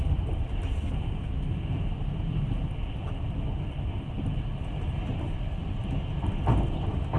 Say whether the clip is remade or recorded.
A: recorded